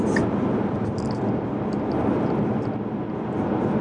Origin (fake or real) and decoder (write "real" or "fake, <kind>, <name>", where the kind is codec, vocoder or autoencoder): real